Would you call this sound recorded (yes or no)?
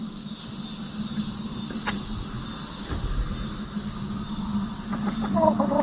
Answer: yes